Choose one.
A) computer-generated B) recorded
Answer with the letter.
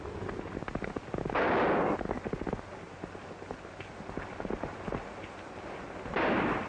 B